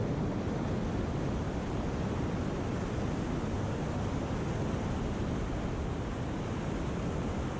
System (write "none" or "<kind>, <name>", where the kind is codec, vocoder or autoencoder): none